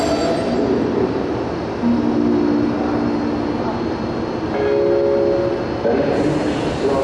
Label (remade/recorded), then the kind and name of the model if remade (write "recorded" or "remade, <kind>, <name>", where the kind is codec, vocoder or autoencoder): recorded